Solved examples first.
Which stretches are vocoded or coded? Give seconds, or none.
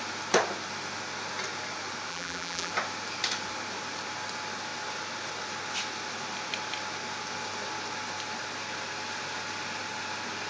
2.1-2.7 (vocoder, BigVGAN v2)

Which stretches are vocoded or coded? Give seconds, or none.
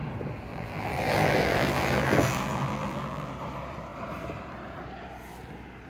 0.5-3.3 (vocoder, BigVGAN v2)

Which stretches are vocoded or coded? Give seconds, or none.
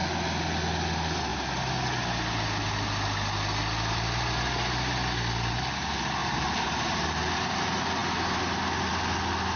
6.2-7.5 (vocoder, BigVGAN v2)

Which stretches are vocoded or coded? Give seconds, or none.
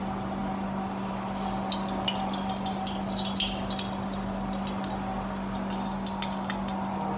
none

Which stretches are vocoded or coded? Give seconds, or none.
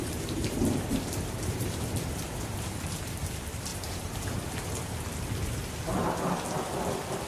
0.0-3.3 (vocoder, BigVGAN v2); 3.7-4.5